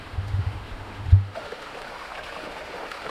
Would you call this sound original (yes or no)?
no